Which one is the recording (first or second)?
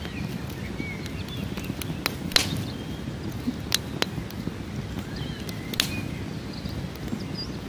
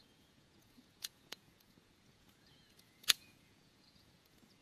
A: first